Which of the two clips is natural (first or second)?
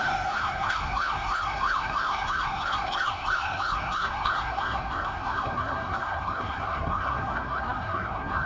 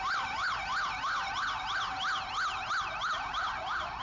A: second